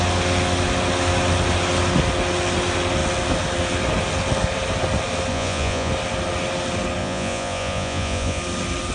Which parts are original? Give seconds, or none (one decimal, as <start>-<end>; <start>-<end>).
0.0-5.3; 5.9-7.0; 8.4-8.9